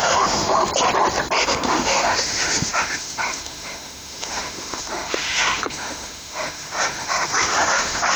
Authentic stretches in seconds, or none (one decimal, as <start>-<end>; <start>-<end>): 0.7-1.4